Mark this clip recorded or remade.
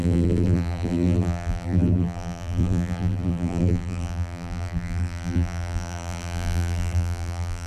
remade